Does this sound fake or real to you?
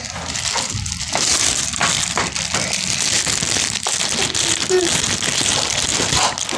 real